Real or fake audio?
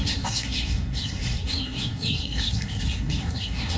fake